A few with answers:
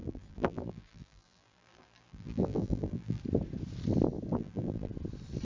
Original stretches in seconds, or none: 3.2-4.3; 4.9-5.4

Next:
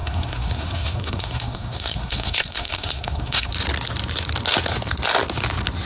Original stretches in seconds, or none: 3.5-5.9

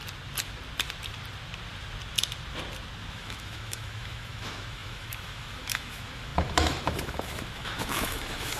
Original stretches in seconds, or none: 0.0-3.1

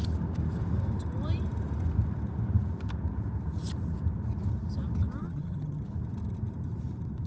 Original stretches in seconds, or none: 0.0-5.2; 5.8-7.3

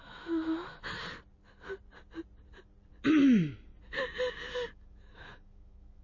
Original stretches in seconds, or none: 1.0-3.8

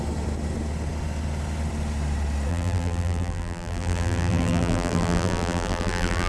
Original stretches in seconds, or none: 0.0-2.5

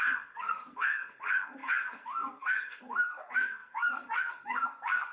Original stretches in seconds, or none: none